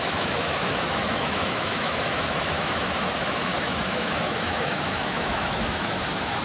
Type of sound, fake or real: fake